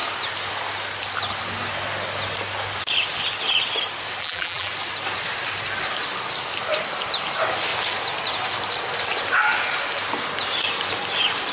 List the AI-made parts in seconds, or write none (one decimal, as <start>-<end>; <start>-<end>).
4.2-4.7